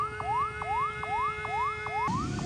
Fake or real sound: real